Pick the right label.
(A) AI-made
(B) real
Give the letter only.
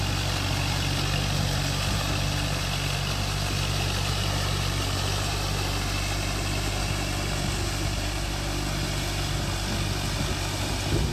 B